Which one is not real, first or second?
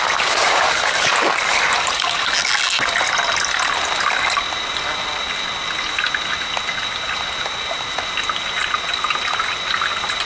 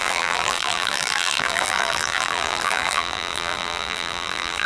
second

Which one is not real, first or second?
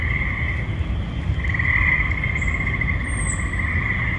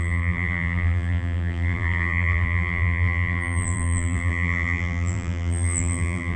second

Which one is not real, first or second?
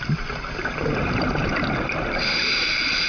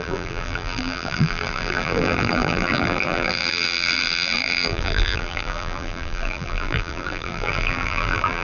second